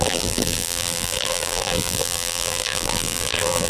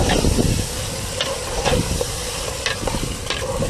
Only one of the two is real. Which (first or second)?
second